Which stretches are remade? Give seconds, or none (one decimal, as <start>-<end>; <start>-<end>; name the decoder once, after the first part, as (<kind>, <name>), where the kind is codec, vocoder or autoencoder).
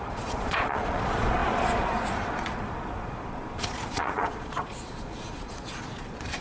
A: 0.0-6.4 (vocoder, Vocos)